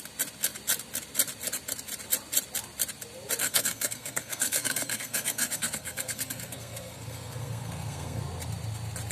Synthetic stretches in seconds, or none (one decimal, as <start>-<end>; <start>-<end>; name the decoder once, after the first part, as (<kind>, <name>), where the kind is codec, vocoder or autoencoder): 3.4-8.2 (codec, SNAC)